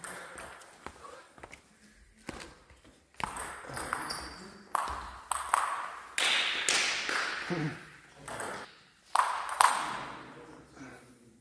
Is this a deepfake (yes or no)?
no